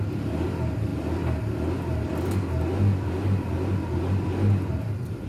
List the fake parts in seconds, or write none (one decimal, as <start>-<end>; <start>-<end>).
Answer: none